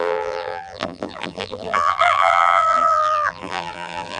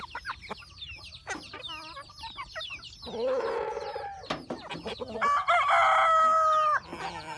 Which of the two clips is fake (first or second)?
first